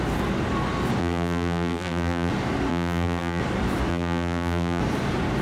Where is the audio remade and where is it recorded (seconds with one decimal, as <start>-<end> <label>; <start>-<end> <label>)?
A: 0.0-1.0 recorded; 1.0-2.3 remade; 2.3-2.7 recorded; 2.7-3.4 remade; 3.4-3.9 recorded; 3.9-4.8 remade; 4.8-5.4 recorded